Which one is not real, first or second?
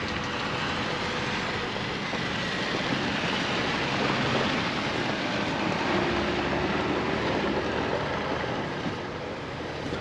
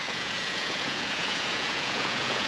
second